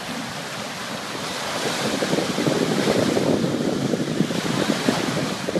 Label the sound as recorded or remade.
recorded